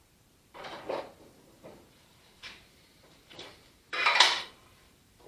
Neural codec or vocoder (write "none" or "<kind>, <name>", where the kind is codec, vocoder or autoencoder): vocoder, BigVGAN v2